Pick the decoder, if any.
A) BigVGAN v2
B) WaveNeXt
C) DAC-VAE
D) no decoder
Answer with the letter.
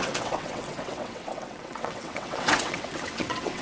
B